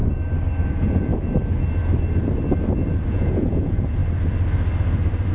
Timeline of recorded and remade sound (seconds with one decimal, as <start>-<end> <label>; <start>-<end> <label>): 0.0-0.7 recorded; 0.7-1.1 remade; 1.1-3.1 recorded; 3.1-4.0 remade; 4.0-5.3 recorded